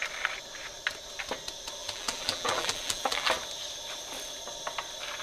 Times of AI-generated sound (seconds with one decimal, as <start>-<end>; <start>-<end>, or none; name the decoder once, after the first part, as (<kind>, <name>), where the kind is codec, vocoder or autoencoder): 1.8-3.3 (vocoder, BigVGAN v2)